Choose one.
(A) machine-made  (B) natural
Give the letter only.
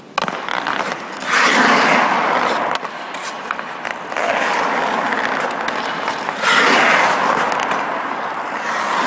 B